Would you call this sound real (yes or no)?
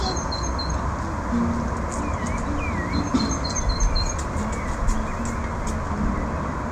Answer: yes